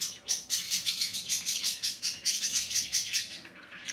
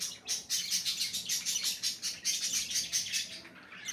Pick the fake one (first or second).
first